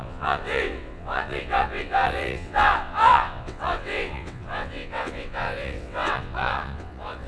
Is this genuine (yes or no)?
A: no